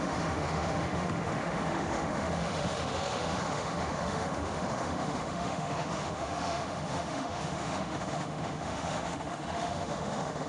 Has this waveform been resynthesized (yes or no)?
yes